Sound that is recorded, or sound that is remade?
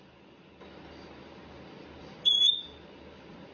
recorded